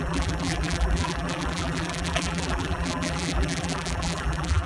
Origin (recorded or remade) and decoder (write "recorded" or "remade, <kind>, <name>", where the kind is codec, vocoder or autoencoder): remade, vocoder, BigVGAN v2